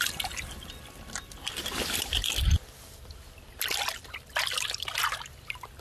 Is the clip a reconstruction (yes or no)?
no